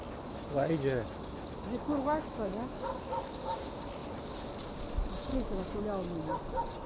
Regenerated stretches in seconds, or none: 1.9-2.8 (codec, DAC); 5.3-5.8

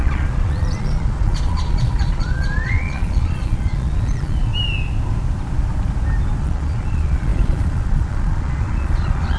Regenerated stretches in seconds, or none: 0.0-4.5 (vocoder, Vocos); 6.4-9.4

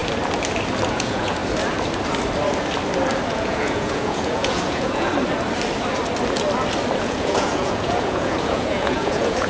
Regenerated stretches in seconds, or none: 0.9-1.4 (vocoder, Vocos); 3.3-5.1; 7.0-9.5

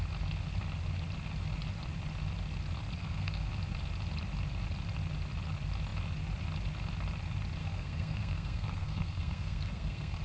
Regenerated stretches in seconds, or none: 3.0-3.5 (codec, SNAC); 7.6-10.2

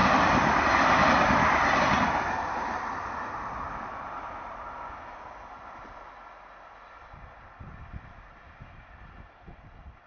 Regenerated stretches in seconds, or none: none

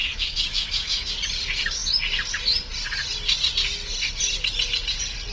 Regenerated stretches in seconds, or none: 0.0-1.1 (autoencoder, DAC-VAE)

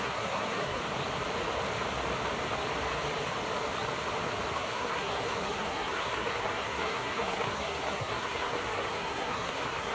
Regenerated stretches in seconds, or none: 0.0-0.8 (codec, SNAC); 4.5-9.9

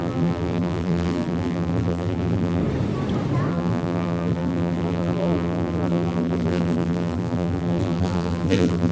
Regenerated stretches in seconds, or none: 0.0-2.6 (vocoder, BigVGAN v2); 3.5-8.9